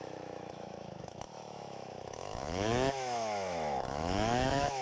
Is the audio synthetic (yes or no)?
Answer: yes